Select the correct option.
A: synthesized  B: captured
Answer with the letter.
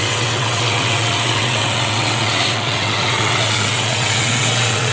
A